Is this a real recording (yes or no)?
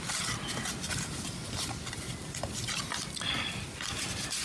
yes